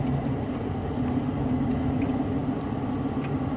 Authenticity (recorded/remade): recorded